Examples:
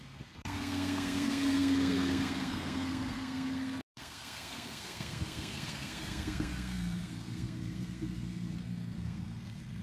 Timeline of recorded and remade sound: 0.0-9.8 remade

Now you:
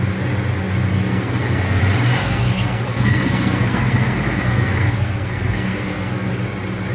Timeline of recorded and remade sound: 0.0-0.9 recorded; 0.9-1.8 remade; 1.8-2.2 recorded; 2.2-6.3 remade; 6.3-6.9 recorded

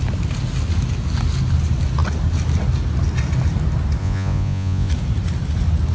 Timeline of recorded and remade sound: 0.0-4.0 recorded; 4.0-4.9 remade; 4.9-5.9 recorded

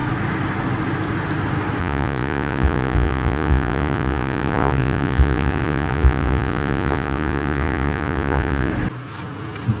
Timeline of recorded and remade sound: 0.0-1.8 recorded; 1.8-8.7 remade; 8.7-9.8 recorded

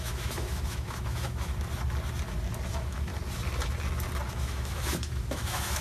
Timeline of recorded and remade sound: 0.0-1.5 remade; 1.5-2.7 recorded; 2.7-3.1 remade; 3.1-4.3 recorded; 4.3-5.8 remade

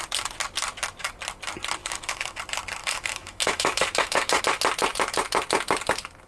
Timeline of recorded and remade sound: 0.0-1.8 recorded; 1.8-2.4 remade; 2.4-2.8 recorded; 2.8-4.4 remade; 4.4-6.3 recorded

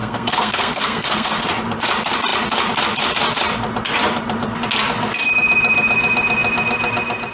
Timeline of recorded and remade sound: 0.0-1.3 remade; 1.3-7.3 recorded

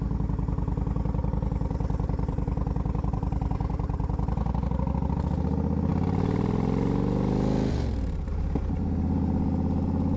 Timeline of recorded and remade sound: 0.0-1.2 recorded; 1.2-3.7 remade; 3.7-10.2 recorded